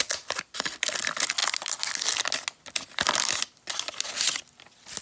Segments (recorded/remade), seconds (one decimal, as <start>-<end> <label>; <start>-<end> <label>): 0.0-5.0 recorded